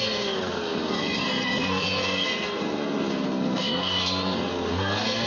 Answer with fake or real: fake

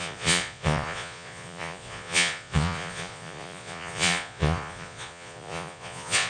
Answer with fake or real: fake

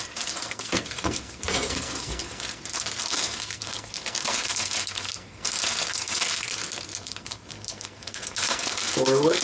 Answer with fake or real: fake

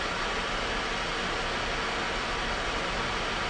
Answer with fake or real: real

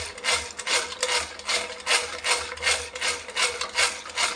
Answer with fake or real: real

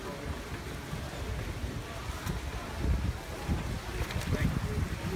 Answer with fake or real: real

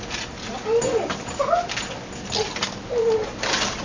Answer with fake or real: real